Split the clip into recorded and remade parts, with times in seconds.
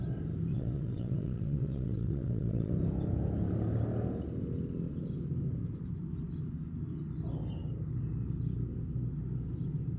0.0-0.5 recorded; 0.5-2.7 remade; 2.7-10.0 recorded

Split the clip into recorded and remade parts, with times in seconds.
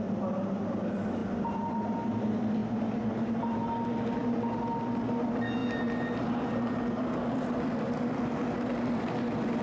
0.0-1.2 recorded; 1.2-2.2 remade; 2.2-5.6 recorded; 5.6-8.2 remade; 8.2-9.6 recorded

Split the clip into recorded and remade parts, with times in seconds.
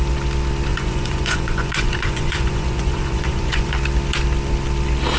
0.0-0.7 recorded; 0.7-3.7 remade; 3.7-5.2 recorded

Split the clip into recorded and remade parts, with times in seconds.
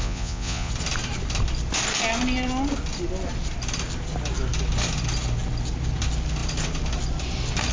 0.0-0.7 remade; 0.7-7.7 recorded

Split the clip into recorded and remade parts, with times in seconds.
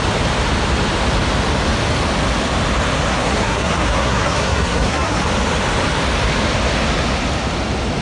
0.0-3.1 recorded; 3.1-5.2 remade; 5.2-8.0 recorded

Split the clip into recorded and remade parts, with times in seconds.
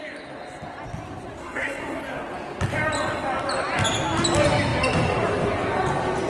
0.0-1.4 recorded; 1.4-2.0 remade; 2.0-6.3 recorded